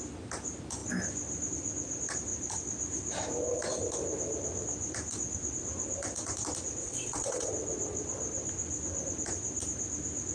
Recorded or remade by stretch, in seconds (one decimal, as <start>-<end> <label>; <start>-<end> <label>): 0.0-6.8 recorded; 6.8-7.5 remade; 7.5-10.3 recorded